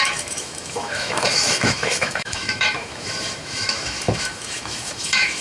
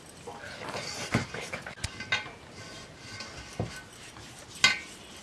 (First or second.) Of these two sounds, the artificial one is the first